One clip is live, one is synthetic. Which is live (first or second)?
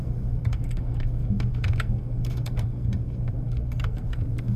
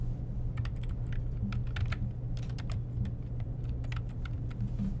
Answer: second